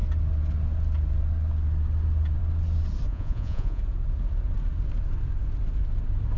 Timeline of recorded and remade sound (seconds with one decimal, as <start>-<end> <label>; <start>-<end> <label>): 0.0-3.1 recorded; 3.1-3.8 remade; 3.8-6.4 recorded